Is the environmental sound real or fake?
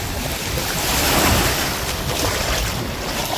real